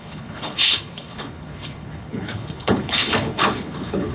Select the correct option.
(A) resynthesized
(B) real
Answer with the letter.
A